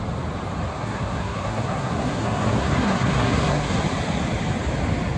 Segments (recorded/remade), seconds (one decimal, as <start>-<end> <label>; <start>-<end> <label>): 0.0-0.7 recorded; 0.7-3.8 remade; 3.8-5.2 recorded